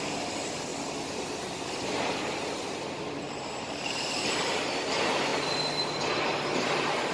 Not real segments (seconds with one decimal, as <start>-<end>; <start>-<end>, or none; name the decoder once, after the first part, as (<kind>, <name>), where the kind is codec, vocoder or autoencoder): 0.0-0.7 (vocoder, BigVGAN v2); 3.4-5.3; 6.3-7.1